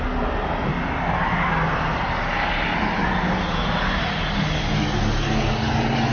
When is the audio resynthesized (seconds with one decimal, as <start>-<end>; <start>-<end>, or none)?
none